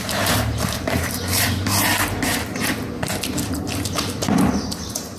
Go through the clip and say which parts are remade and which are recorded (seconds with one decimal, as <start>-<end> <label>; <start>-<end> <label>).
0.0-1.9 remade; 1.9-3.6 recorded; 3.6-5.2 remade